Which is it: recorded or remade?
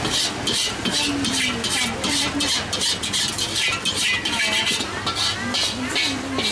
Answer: recorded